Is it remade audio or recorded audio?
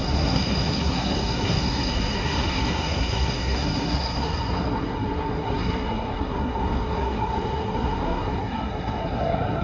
remade